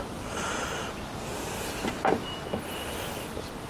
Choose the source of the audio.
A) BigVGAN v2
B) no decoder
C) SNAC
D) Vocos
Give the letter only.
B